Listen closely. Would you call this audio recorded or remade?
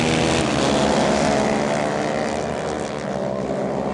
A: recorded